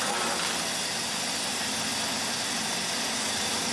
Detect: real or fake fake